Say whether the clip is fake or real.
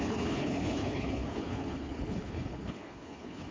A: fake